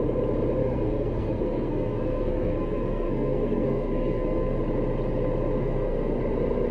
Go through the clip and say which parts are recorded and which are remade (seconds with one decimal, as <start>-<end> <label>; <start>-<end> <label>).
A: 0.0-0.6 recorded; 0.6-4.6 remade; 4.6-5.6 recorded; 5.6-6.2 remade; 6.2-6.7 recorded